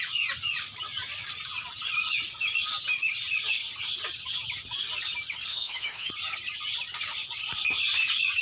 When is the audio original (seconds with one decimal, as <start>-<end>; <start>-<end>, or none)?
0.0-5.5; 6.1-8.4